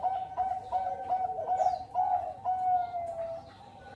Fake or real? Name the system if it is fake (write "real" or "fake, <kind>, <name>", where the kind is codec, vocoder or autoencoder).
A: real